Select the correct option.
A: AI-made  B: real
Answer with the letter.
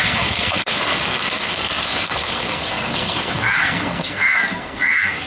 A